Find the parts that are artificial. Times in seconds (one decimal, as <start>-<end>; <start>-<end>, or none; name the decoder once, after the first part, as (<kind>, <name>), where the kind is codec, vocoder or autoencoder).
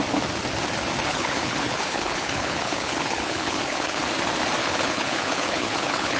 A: 1.1-4.0 (codec, HILCodec); 4.6-6.2